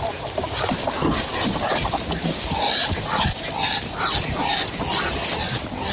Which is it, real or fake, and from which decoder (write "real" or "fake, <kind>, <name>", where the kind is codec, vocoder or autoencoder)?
fake, vocoder, BigVGAN v2